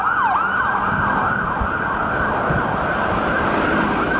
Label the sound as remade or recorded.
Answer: recorded